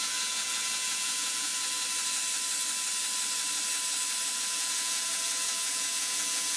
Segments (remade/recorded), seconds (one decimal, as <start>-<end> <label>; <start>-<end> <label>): 0.0-1.5 remade; 1.5-4.4 recorded; 4.4-6.6 remade